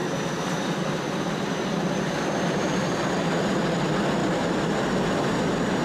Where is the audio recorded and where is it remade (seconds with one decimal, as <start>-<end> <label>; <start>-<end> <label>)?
0.0-3.4 remade; 3.4-5.8 recorded

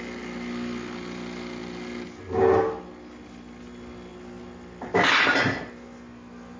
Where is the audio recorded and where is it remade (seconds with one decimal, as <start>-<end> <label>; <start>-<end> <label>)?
0.0-6.6 recorded

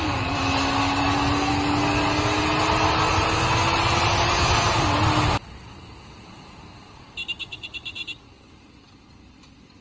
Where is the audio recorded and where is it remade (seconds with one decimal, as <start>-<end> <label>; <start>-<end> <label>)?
0.0-7.4 recorded; 7.4-8.0 remade; 8.0-9.8 recorded

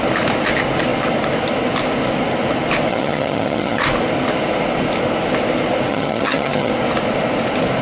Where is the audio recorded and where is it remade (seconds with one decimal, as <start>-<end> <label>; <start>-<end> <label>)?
0.0-2.9 recorded; 2.9-3.8 remade; 3.8-5.9 recorded; 5.9-6.7 remade; 6.7-7.8 recorded